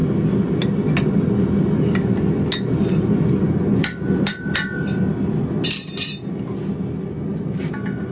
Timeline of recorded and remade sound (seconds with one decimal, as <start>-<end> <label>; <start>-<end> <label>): 0.0-8.1 recorded